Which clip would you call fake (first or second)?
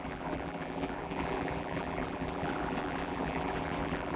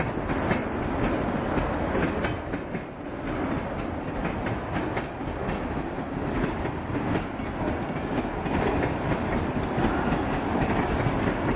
first